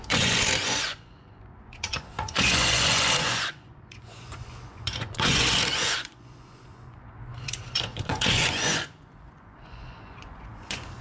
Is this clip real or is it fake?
fake